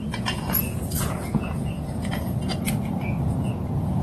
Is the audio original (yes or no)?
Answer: no